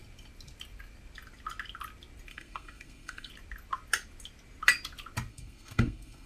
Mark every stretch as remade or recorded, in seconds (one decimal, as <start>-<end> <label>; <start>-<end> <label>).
0.0-2.3 recorded; 2.3-3.3 remade; 3.3-5.3 recorded; 5.3-6.3 remade